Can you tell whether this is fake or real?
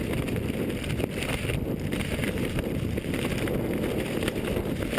real